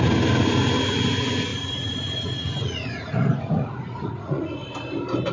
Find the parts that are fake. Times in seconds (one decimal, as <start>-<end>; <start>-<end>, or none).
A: 1.5-4.5